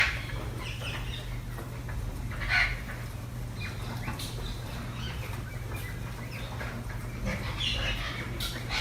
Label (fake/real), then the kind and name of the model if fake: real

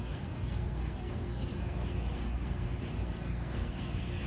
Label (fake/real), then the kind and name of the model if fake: fake, codec, SNAC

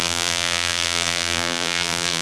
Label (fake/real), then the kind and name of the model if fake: fake, vocoder, BigVGAN v2